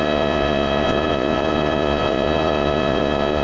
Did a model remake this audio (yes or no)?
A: yes